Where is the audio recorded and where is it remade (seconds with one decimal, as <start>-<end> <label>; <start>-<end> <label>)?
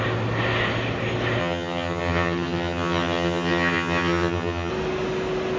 0.0-1.4 recorded; 1.4-4.7 remade; 4.7-5.6 recorded